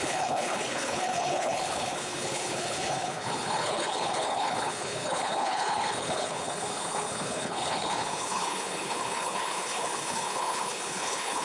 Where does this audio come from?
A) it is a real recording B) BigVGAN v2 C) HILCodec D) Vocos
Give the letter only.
C